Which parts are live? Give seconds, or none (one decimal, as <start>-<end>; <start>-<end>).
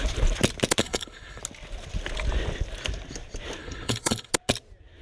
0.0-0.8; 1.4-3.6; 4.3-5.0